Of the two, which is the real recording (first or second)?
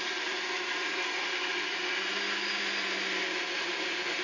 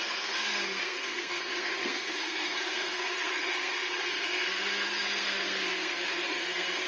first